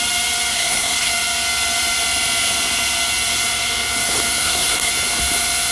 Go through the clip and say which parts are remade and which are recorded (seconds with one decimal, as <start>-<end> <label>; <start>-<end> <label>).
0.0-0.5 recorded; 0.5-1.1 remade; 1.1-4.4 recorded; 4.4-4.9 remade; 4.9-5.7 recorded